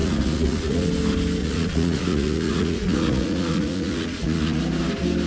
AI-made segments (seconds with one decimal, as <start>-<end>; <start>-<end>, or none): 0.0-0.9; 1.4-4.6